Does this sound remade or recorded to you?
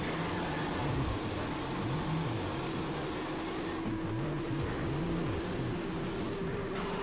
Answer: recorded